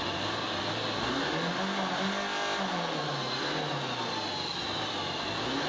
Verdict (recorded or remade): recorded